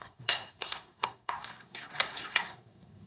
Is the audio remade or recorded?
remade